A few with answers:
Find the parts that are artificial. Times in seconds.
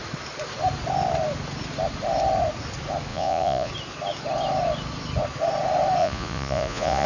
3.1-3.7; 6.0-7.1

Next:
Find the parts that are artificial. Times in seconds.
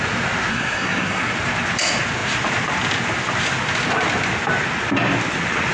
0.5-1.3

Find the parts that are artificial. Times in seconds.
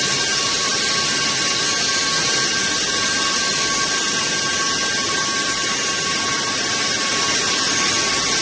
none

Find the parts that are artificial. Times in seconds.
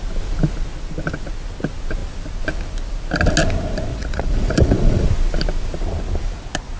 3.9-5.0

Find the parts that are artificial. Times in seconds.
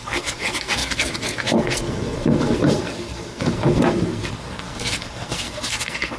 0.0-6.2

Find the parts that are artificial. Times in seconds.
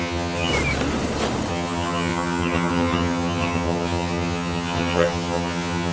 0.0-0.5; 1.5-5.9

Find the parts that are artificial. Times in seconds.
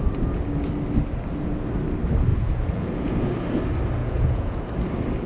2.3-3.3; 4.0-4.6